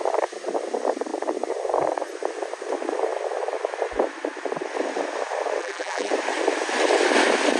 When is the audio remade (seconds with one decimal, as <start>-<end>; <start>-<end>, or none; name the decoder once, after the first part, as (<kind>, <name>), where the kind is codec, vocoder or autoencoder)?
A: 5.6-6.1 (vocoder, BigVGAN v2)